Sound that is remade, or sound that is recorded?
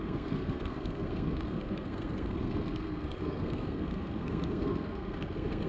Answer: remade